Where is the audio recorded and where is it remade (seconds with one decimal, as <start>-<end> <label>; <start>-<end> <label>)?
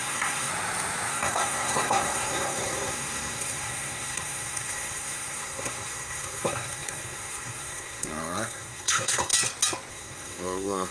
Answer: 0.0-0.5 remade; 0.5-1.1 recorded; 1.1-9.3 remade; 9.3-9.9 recorded; 9.9-10.9 remade